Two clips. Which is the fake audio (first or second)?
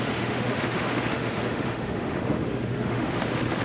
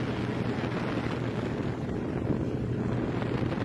first